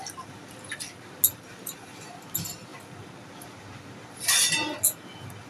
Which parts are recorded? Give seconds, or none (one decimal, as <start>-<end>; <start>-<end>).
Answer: 0.0-5.5